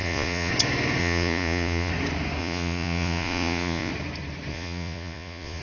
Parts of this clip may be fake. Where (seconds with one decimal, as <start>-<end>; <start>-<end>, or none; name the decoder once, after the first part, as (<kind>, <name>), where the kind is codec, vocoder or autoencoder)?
0.0-0.5 (vocoder, Vocos); 1.0-1.9; 2.4-3.9; 4.5-5.6